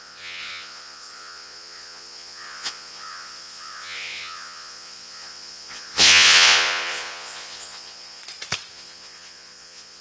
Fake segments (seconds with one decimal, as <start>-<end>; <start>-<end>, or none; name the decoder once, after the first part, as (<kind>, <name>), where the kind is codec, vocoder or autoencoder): 0.0-8.2 (vocoder, Vocos); 8.7-10.0